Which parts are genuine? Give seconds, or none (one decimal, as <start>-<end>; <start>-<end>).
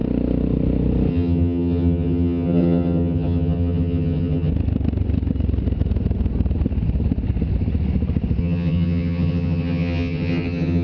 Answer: 0.0-1.1; 4.5-8.4